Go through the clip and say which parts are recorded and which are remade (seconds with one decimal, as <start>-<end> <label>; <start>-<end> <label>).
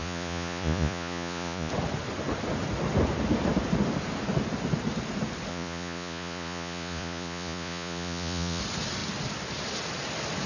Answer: 0.0-1.7 remade; 1.7-5.5 recorded; 5.5-8.6 remade; 8.6-10.5 recorded